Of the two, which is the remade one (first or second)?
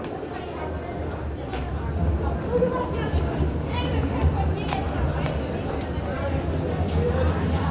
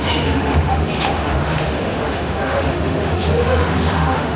second